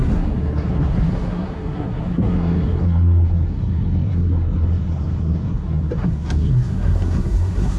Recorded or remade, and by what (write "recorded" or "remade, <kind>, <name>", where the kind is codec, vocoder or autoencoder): remade, codec, SNAC